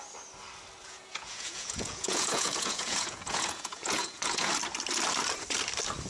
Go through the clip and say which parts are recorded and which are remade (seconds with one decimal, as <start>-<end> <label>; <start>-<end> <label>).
0.0-0.8 recorded; 0.8-4.5 remade; 4.5-6.1 recorded